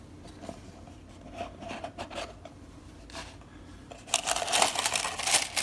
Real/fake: real